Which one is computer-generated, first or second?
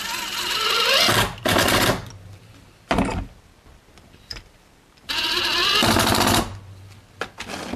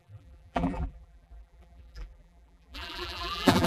second